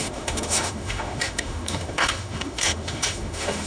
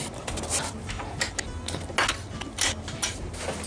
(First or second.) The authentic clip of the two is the second